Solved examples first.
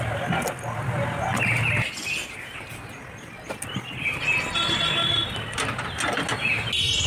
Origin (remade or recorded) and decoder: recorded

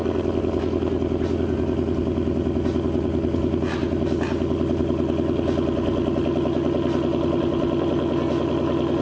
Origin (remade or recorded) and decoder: recorded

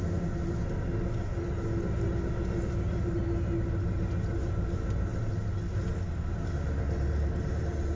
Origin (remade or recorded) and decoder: recorded